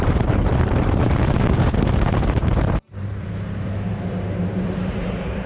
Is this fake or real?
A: fake